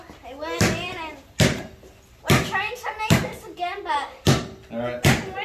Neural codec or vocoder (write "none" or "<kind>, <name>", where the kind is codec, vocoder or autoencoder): none